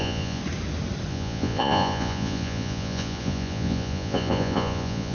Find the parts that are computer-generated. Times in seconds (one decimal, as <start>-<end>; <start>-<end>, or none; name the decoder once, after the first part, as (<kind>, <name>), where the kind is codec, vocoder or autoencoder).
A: 0.0-0.4 (vocoder, Vocos); 1.1-5.1